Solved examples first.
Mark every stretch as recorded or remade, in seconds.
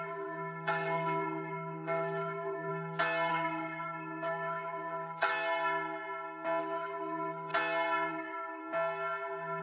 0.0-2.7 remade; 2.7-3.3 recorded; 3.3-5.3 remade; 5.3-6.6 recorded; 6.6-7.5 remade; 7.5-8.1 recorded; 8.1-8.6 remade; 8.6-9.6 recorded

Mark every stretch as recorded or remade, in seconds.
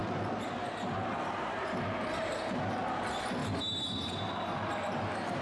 0.0-5.4 recorded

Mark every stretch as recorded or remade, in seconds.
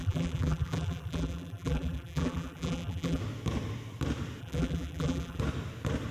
0.0-3.2 remade; 3.2-4.4 recorded; 4.4-5.4 remade; 5.4-6.1 recorded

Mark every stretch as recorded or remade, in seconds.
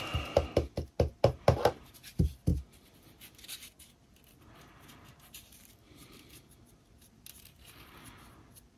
0.0-1.1 recorded; 1.1-1.9 remade; 1.9-8.8 recorded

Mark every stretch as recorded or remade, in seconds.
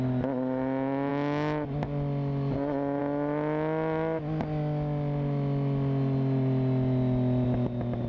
0.0-8.1 recorded